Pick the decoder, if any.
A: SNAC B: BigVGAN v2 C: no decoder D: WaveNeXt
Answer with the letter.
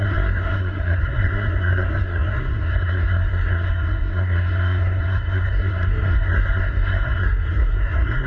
A